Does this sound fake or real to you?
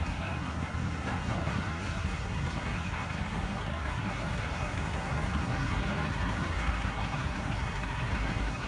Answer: fake